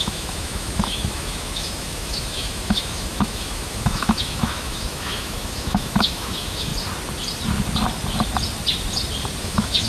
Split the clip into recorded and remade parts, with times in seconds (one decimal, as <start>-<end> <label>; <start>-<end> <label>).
0.0-6.7 remade; 6.7-9.4 recorded; 9.4-9.9 remade